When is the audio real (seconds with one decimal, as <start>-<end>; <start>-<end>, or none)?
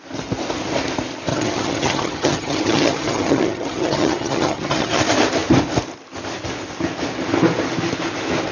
0.0-1.3; 5.0-8.5